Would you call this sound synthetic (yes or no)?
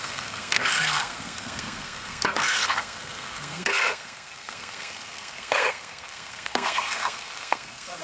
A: yes